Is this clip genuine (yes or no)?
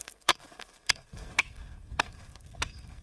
no